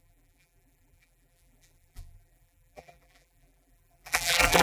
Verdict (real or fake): fake